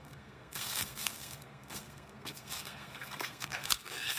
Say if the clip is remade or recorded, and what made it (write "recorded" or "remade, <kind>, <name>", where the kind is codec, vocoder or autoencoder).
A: remade, codec, SNAC